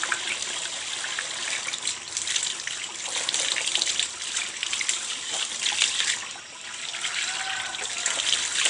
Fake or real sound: real